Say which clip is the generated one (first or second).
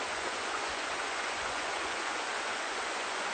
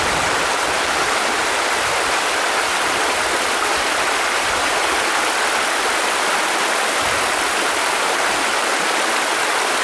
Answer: first